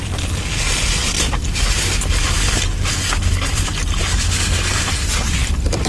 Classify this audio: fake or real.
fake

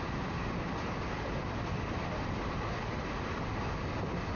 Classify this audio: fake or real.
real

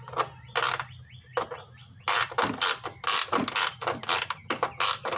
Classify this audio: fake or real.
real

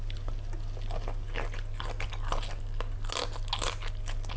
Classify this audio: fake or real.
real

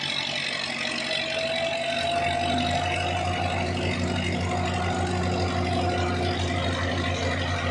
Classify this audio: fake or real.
real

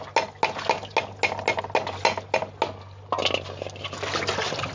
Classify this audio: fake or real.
real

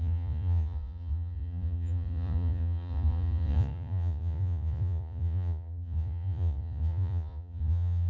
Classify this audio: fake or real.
fake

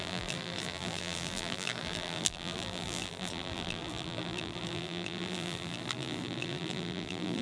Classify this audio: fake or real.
fake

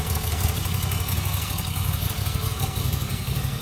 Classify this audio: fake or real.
fake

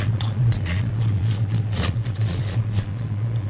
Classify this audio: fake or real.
fake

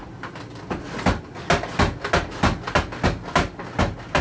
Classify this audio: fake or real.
real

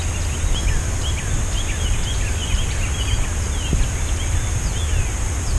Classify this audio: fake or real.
real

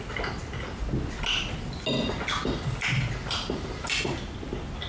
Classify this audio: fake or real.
real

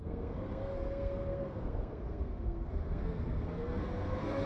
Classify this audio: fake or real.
fake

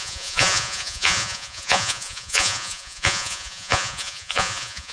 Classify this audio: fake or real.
fake